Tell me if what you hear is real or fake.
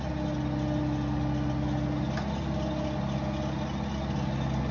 real